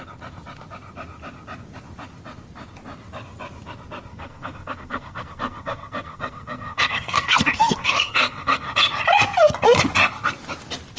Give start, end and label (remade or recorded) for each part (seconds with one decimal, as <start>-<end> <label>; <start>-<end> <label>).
0.0-4.1 recorded; 4.1-8.7 remade; 8.7-11.0 recorded